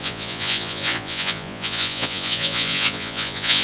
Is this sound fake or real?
fake